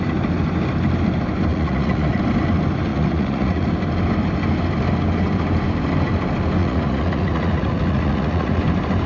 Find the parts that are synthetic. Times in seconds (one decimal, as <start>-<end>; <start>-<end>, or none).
1.5-2.2; 2.9-3.7; 6.6-8.6